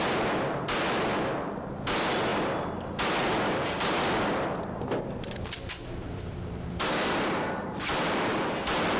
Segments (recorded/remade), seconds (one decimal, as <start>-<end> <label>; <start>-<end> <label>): 0.0-2.3 recorded; 2.3-5.0 remade; 5.0-6.0 recorded; 6.0-8.3 remade; 8.3-9.0 recorded